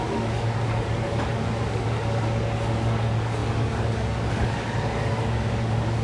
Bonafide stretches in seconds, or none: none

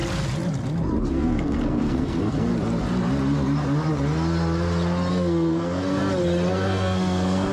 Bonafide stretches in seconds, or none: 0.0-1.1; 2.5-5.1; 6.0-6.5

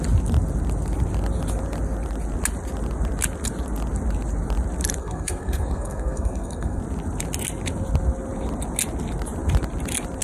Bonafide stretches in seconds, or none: 0.0-5.0; 6.8-10.2

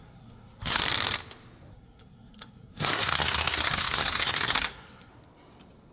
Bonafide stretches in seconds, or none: 0.8-1.7; 5.1-5.9

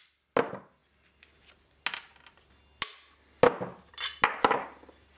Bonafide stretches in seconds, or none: 0.0-5.2

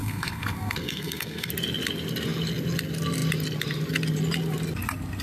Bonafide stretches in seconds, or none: 1.5-5.2